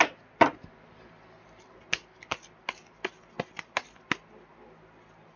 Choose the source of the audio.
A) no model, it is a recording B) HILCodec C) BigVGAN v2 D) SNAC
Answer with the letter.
A